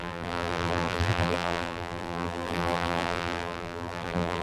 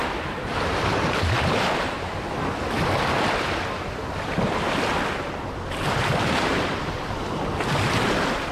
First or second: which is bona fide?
second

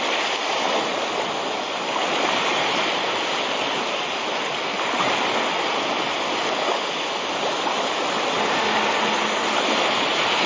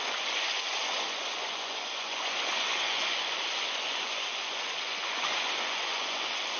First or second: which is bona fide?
first